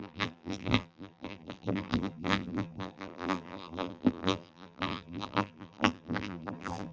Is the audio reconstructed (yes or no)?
yes